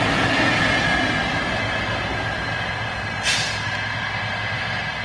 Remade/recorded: recorded